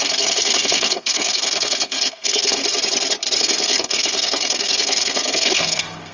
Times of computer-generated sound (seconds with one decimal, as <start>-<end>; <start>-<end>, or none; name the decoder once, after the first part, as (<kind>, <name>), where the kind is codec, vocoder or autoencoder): 0.0-2.6 (codec, SNAC); 3.4-6.1